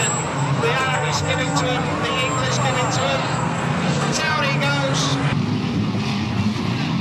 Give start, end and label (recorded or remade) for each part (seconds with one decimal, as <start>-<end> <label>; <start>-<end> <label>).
0.0-0.8 recorded; 0.8-1.6 remade; 1.6-3.2 recorded; 3.2-4.2 remade; 4.2-7.0 recorded